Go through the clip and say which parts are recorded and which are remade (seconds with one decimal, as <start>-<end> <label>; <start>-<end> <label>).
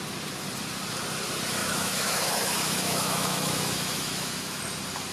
0.0-1.6 recorded; 1.6-4.6 remade; 4.6-5.1 recorded